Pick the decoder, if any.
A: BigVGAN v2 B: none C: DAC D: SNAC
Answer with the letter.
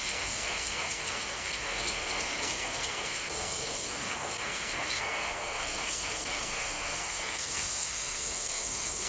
D